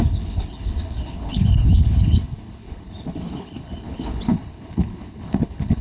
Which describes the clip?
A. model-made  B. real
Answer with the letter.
A